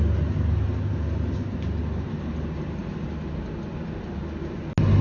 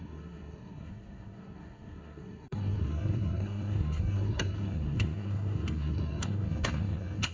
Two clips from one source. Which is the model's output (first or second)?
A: second